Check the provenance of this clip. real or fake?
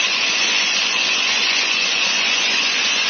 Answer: fake